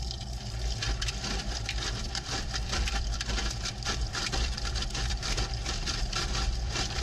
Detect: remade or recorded remade